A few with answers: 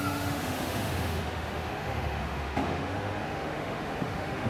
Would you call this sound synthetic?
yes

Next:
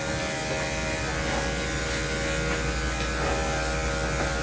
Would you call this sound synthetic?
no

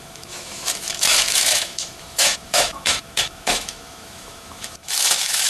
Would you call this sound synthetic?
yes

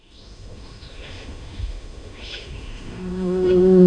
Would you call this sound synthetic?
yes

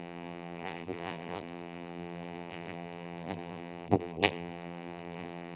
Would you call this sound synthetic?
yes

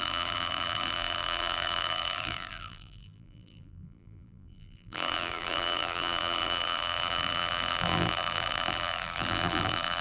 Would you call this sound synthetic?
yes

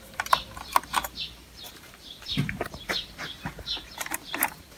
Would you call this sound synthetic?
yes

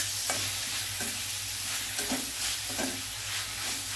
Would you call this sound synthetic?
no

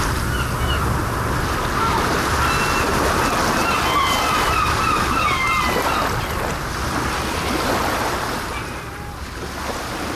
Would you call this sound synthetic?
no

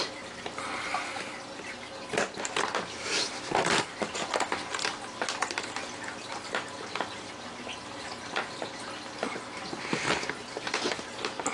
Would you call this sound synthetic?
no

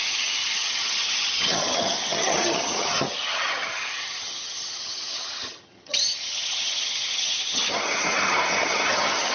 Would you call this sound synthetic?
yes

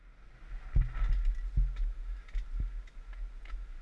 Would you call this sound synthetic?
no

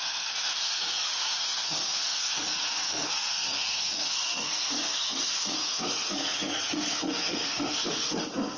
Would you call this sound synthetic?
yes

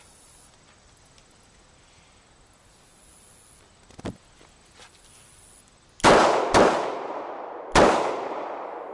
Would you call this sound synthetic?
no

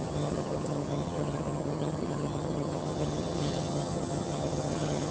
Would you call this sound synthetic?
yes